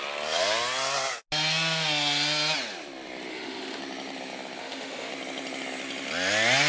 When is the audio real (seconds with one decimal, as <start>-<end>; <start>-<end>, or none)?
0.0-3.3; 3.8-4.6; 5.1-6.7

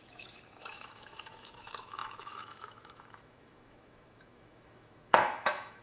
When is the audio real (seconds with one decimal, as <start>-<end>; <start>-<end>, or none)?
none

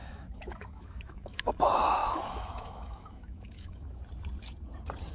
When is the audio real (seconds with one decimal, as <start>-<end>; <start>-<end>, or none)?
1.5-2.0; 4.0-5.1

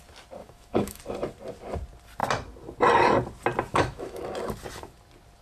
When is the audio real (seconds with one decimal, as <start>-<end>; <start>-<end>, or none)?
0.0-0.4; 1.0-3.7; 4.2-5.4

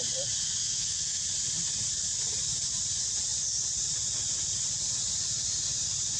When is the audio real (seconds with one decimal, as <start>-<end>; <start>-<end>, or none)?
0.0-0.6; 1.2-6.2

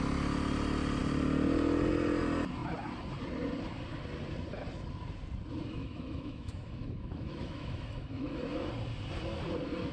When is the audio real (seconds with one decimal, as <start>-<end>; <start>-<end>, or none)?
0.0-5.8; 8.7-9.9

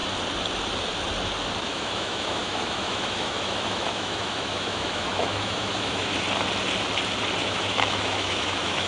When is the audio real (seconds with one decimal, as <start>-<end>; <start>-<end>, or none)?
0.0-1.6; 6.1-7.4